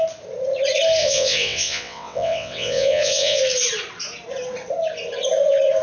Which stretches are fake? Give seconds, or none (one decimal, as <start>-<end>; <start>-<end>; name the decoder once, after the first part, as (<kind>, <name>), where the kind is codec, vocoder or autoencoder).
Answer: 1.0-3.4 (vocoder, WaveNeXt)